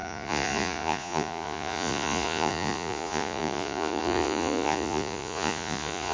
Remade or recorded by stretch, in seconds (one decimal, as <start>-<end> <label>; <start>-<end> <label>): 0.0-6.1 remade